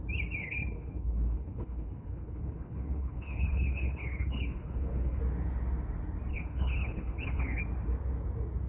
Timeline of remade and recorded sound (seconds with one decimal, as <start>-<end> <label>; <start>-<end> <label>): 0.0-0.4 recorded; 0.4-5.2 remade; 5.2-6.3 recorded; 6.3-7.6 remade; 7.6-8.7 recorded